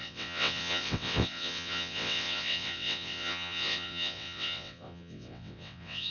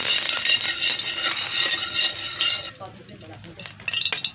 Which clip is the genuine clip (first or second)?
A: second